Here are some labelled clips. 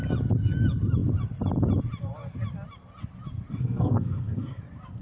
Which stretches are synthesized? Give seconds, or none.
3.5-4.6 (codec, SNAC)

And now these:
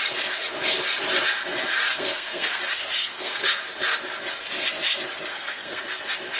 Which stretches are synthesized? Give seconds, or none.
1.9-2.6 (codec, SNAC); 3.0-3.6; 5.3-5.8

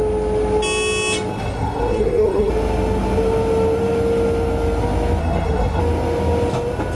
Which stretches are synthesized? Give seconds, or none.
1.3-2.5 (codec, SNAC); 5.2-5.8

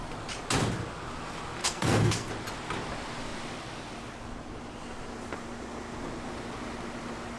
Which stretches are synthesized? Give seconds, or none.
1.6-2.3 (codec, SNAC)